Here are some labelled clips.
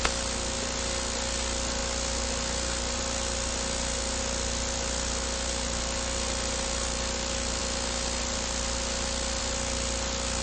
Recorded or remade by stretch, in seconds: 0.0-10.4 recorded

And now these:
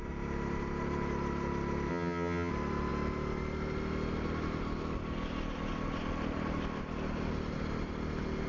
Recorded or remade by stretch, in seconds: 0.0-1.9 recorded; 1.9-2.5 remade; 2.5-8.5 recorded

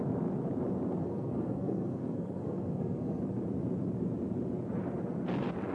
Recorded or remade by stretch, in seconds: 0.0-1.0 recorded; 1.0-3.2 remade; 3.2-5.7 recorded

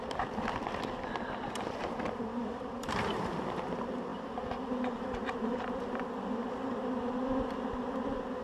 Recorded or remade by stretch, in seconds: 0.0-2.4 recorded; 2.4-3.1 remade; 3.1-4.1 recorded; 4.1-6.1 remade; 6.1-8.4 recorded

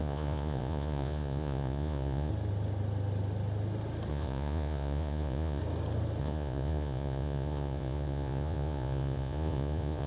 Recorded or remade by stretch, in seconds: 0.0-2.3 remade; 2.3-4.1 recorded; 4.1-5.6 remade; 5.6-6.2 recorded; 6.2-10.1 remade

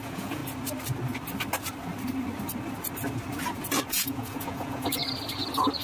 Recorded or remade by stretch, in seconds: 0.0-0.4 remade; 0.4-3.9 recorded; 3.9-5.0 remade; 5.0-5.8 recorded